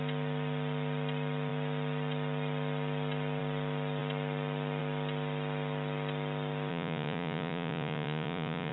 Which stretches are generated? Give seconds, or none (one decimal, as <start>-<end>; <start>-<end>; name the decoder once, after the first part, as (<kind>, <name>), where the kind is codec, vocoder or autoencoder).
6.7-8.7 (vocoder, Vocos)